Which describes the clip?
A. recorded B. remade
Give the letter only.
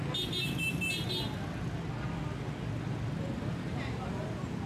A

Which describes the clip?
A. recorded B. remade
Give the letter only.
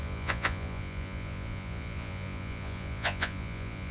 B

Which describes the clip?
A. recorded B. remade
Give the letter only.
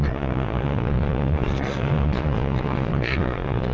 B